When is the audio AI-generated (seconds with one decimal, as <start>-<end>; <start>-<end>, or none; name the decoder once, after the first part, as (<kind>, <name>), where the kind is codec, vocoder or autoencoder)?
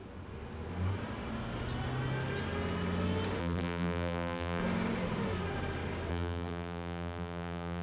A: 3.4-4.6 (vocoder, BigVGAN v2); 6.1-7.8